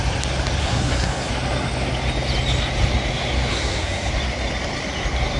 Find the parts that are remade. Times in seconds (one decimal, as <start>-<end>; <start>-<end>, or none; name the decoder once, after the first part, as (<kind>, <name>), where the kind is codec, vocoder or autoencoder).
0.6-1.3 (codec, SNAC); 3.5-4.1

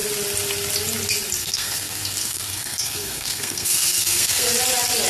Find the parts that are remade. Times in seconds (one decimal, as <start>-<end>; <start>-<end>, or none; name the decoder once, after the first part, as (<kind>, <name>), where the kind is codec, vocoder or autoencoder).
1.4-4.5 (codec, SNAC)

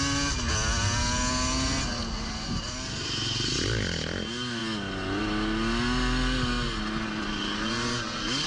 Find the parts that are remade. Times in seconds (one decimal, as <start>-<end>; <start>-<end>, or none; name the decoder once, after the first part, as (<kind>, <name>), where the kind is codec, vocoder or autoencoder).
none

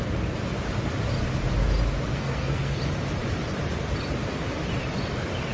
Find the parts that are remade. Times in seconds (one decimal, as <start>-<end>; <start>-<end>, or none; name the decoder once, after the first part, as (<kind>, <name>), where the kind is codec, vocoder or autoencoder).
2.1-2.8 (codec, SNAC)

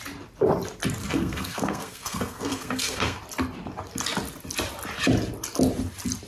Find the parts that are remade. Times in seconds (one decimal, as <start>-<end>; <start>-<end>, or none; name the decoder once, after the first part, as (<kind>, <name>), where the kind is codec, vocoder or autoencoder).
1.0-3.2 (codec, SNAC)

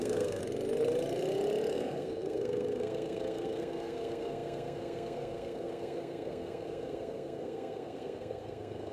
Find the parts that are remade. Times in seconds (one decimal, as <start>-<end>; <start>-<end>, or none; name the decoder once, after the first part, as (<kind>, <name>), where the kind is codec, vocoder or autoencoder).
0.0-0.4 (codec, SNAC); 1.7-8.9

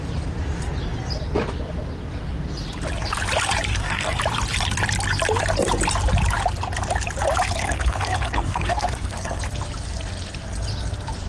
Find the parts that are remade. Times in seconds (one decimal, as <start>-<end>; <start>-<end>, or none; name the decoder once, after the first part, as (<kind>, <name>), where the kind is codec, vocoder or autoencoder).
3.7-4.2 (codec, SNAC); 7.6-9.4

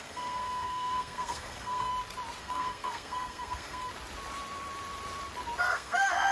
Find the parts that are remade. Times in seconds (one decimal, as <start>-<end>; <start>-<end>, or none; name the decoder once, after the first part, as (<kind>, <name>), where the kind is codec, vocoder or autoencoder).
0.0-1.9 (codec, SNAC); 2.4-3.9; 5.6-6.3